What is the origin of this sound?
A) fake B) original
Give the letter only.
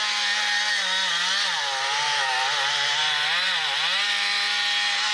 B